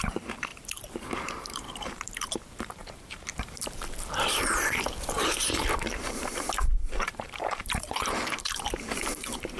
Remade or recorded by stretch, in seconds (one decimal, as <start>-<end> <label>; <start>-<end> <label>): 0.0-0.5 remade; 0.5-1.1 recorded; 1.1-9.6 remade